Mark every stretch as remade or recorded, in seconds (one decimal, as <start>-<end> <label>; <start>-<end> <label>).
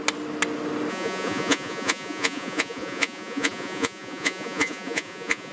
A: 0.0-0.9 recorded; 0.9-5.5 remade